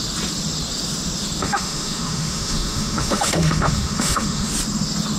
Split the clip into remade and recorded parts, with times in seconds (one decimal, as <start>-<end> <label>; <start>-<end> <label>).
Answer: 0.0-1.4 recorded; 1.4-4.5 remade; 4.5-5.2 recorded

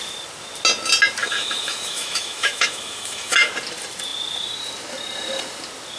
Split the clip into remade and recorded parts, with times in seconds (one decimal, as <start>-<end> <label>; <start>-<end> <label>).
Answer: 0.0-1.2 recorded; 1.2-3.5 remade; 3.5-6.0 recorded

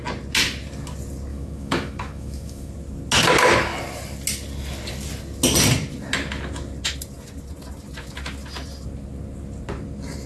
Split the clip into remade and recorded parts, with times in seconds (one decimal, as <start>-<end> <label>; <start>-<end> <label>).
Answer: 0.0-1.3 recorded; 1.3-2.7 remade; 2.7-10.3 recorded

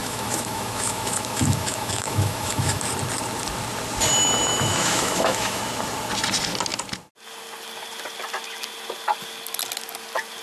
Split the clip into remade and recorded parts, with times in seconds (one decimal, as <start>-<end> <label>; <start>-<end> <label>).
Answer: 0.0-2.8 remade; 2.8-4.5 recorded; 4.5-5.6 remade; 5.6-10.4 recorded